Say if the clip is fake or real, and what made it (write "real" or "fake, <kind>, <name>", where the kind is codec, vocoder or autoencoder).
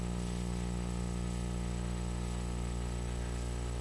real